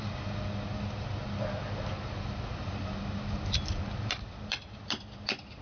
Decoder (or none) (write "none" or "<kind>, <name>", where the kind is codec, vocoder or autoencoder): none